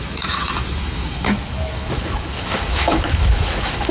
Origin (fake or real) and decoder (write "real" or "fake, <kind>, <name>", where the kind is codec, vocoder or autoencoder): fake, autoencoder, DAC-VAE